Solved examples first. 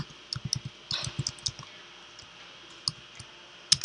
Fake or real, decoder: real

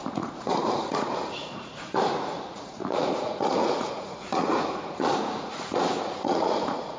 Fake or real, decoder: fake, vocoder, Vocos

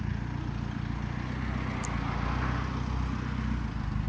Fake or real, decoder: real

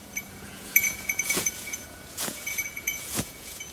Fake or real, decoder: fake, vocoder, Vocos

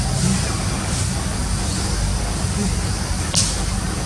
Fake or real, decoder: real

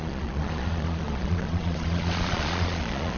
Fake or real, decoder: fake, vocoder, Vocos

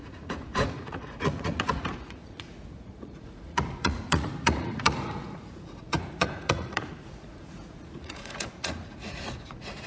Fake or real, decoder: fake, vocoder, Vocos